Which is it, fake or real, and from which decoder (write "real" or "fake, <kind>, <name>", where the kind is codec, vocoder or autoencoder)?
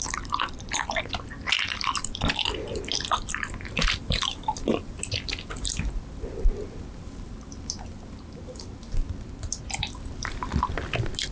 real